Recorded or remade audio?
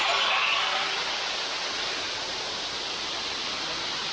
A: recorded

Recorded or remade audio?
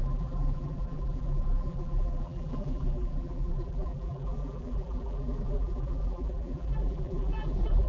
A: remade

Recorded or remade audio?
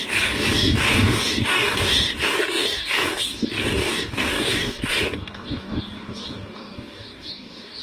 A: remade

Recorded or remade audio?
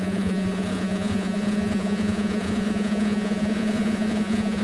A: remade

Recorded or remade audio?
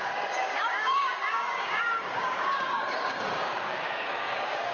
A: remade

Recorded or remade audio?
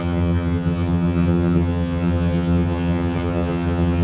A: remade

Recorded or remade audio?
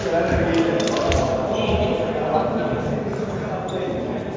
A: recorded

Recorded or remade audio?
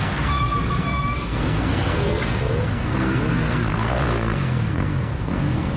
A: remade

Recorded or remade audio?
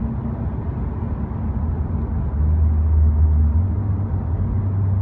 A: recorded